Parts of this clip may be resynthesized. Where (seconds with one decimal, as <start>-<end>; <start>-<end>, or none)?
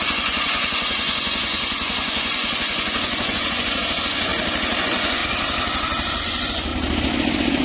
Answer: 0.0-4.3; 4.8-5.2; 6.2-6.7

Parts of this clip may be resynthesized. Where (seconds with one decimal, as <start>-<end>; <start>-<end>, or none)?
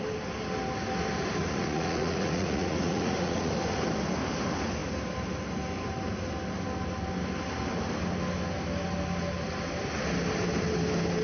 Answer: 1.4-3.5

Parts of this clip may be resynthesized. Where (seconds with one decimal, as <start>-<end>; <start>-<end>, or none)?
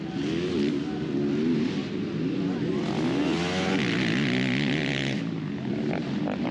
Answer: none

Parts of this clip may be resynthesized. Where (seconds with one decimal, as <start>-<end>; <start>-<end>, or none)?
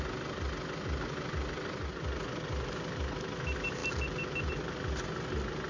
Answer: none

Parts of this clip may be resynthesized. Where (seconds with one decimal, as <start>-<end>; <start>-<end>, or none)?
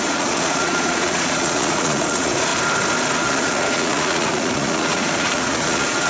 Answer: 0.0-2.5; 3.2-6.1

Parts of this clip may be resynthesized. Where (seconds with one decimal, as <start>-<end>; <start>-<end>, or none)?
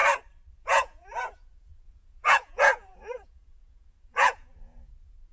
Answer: 0.5-5.3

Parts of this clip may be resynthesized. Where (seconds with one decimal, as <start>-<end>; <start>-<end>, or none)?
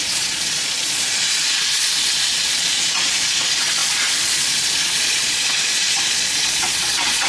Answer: 0.0-7.3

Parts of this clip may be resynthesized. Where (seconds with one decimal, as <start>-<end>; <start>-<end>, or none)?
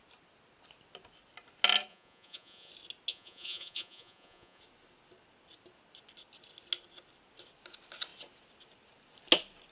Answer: 1.9-2.7; 3.1-4.6